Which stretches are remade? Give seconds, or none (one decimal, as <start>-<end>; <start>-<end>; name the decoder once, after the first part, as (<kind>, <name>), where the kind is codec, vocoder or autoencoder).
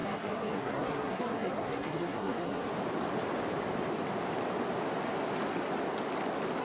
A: 0.0-2.7 (codec, SNAC)